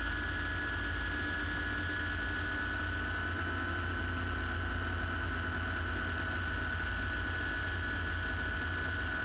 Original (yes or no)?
yes